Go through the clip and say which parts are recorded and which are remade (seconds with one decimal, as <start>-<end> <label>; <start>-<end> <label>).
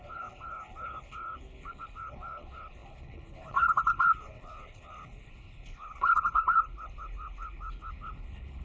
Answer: 0.0-8.6 remade